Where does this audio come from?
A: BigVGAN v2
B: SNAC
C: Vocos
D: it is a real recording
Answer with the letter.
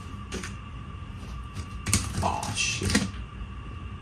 A